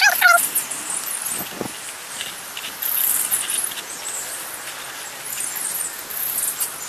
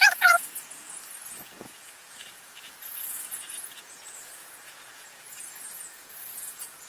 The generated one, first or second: second